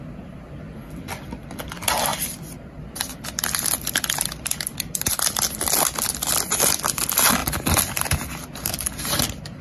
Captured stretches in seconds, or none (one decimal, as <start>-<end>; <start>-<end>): 0.0-9.6